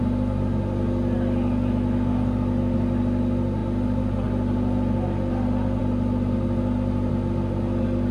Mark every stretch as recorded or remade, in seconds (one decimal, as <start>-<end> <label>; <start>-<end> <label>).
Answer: 0.0-8.1 recorded